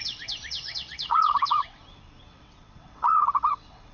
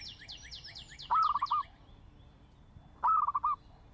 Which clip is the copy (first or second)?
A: first